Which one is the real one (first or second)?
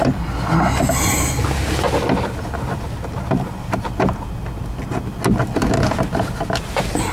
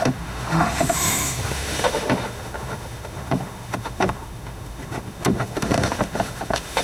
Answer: first